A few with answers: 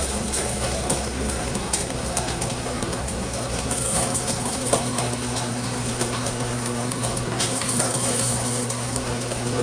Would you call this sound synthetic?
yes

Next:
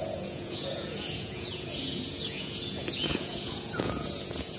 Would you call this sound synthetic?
yes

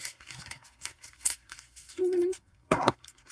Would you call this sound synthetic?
yes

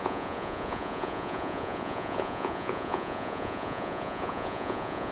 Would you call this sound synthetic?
yes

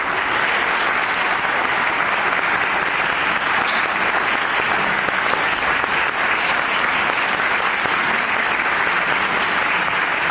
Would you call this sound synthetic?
no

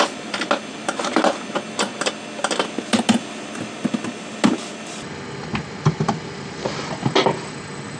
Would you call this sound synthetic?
no